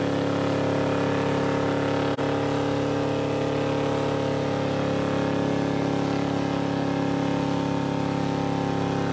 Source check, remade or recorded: recorded